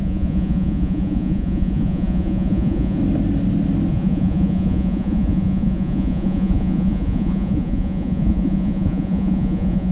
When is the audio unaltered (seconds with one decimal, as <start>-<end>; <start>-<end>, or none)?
3.0-3.9